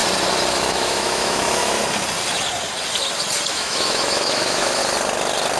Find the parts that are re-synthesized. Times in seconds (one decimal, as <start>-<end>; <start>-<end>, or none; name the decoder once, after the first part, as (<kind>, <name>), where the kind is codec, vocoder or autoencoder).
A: 0.5-1.8 (autoencoder, DAC-VAE); 3.5-4.8